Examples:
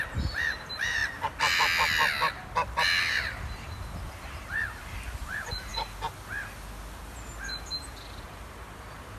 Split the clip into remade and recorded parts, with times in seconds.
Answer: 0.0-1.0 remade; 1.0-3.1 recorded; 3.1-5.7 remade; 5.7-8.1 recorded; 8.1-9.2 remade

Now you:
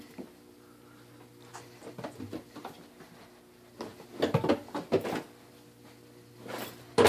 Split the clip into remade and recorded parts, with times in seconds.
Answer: 0.0-7.1 recorded

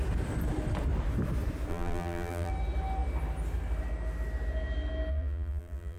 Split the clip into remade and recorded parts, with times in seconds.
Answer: 0.0-1.7 recorded; 1.7-2.5 remade; 2.5-5.1 recorded; 5.1-6.0 remade

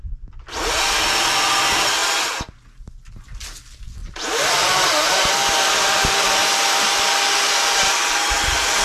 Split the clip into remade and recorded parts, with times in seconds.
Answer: 0.0-4.0 recorded; 4.0-5.3 remade; 5.3-6.4 recorded; 6.4-7.0 remade; 7.0-8.8 recorded